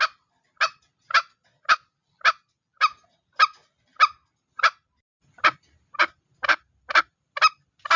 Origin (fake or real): real